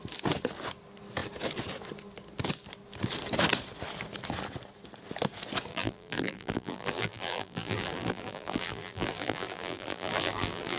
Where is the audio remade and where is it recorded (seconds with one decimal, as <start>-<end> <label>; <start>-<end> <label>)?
0.0-5.7 recorded; 5.7-10.8 remade